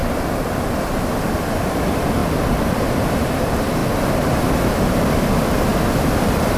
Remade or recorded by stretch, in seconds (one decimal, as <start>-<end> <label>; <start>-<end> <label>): 0.0-1.2 recorded; 1.2-2.2 remade; 2.2-3.0 recorded; 3.0-3.8 remade; 3.8-4.8 recorded; 4.8-6.6 remade